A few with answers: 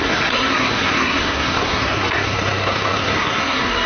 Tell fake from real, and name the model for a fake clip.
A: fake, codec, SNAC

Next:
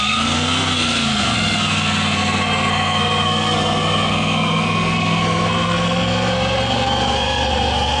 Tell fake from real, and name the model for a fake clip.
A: fake, codec, SNAC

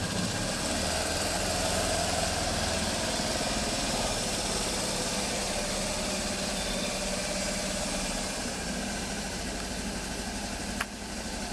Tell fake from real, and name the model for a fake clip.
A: real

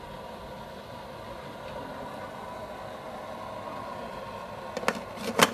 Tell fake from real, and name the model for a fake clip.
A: real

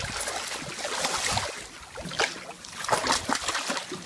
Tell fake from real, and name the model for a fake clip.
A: real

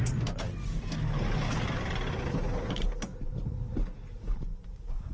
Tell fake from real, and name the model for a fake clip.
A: real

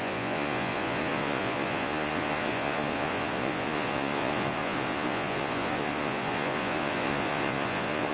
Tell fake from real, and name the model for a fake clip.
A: fake, vocoder, Vocos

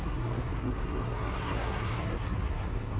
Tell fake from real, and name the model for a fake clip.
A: fake, codec, SNAC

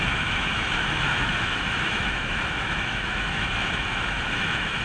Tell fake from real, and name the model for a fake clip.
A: fake, autoencoder, DAC-VAE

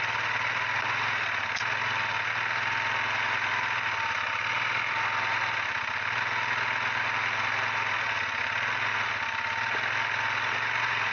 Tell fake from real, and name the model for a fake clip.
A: real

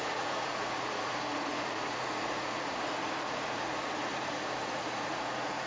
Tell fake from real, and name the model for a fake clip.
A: fake, vocoder, Vocos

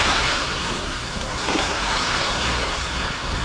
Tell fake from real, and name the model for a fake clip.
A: fake, codec, SNAC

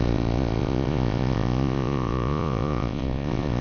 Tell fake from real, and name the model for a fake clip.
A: fake, vocoder, Vocos